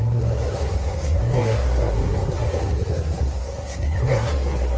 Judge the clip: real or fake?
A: fake